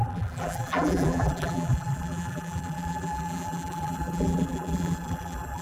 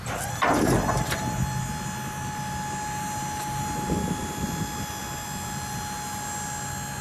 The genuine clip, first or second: second